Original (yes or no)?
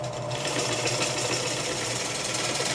no